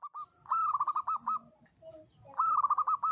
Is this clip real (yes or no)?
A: yes